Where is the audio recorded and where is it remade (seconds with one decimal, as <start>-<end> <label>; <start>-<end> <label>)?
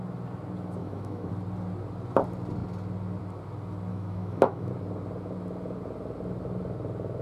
0.0-0.8 recorded; 0.8-1.3 remade; 1.3-3.9 recorded; 3.9-4.7 remade; 4.7-7.2 recorded